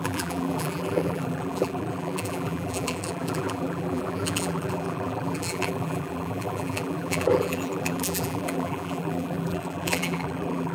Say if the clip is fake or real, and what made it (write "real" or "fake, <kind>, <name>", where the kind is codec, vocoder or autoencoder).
fake, vocoder, BigVGAN v2